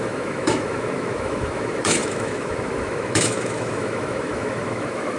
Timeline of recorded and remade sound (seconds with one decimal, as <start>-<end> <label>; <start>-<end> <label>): 0.0-5.2 remade